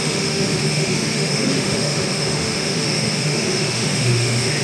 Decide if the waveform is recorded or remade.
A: remade